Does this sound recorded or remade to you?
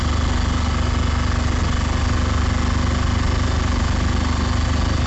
recorded